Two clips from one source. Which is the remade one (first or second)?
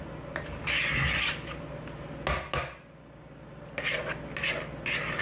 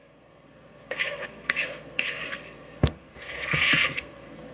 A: second